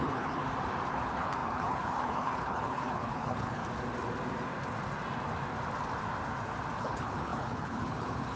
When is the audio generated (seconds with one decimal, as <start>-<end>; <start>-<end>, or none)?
0.0-0.4; 0.9-3.6; 6.8-8.4